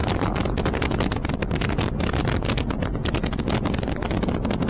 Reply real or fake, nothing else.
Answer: real